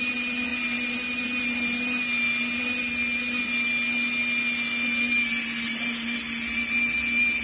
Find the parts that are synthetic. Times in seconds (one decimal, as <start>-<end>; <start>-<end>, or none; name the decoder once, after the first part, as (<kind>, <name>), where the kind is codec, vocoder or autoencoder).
none